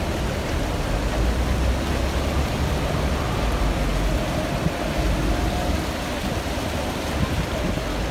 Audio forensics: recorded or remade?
recorded